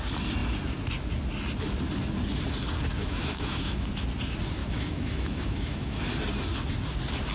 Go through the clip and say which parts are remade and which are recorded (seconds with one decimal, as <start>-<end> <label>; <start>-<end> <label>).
0.0-3.0 recorded; 3.0-3.9 remade; 3.9-4.6 recorded; 4.6-6.0 remade; 6.0-7.3 recorded